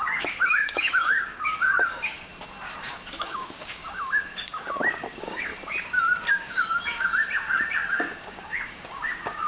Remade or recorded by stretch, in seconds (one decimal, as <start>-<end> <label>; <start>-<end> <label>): 0.0-2.3 remade; 2.3-2.8 recorded; 2.8-5.5 remade; 5.5-6.3 recorded; 6.3-7.1 remade; 7.1-7.8 recorded; 7.8-9.5 remade